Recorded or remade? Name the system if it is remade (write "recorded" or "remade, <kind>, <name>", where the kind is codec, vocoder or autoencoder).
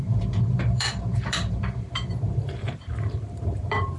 remade, vocoder, BigVGAN v2